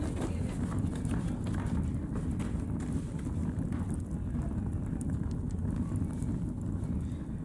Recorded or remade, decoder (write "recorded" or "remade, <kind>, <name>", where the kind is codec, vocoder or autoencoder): recorded